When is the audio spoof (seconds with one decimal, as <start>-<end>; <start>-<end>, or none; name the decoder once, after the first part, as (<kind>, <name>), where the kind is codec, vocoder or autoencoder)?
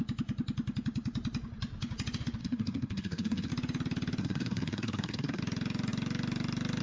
2.4-3.5 (codec, SNAC); 4.2-5.4